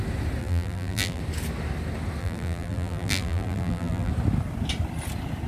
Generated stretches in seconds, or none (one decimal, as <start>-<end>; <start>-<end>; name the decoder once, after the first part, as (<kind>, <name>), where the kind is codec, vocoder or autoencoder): 0.4-1.2 (vocoder, BigVGAN v2); 2.2-4.1